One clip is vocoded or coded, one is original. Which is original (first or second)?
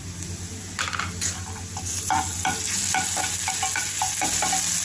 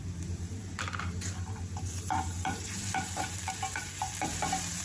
first